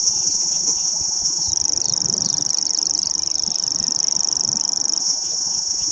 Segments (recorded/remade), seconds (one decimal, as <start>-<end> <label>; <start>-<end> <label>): 0.0-1.5 remade; 1.5-5.0 recorded; 5.0-5.9 remade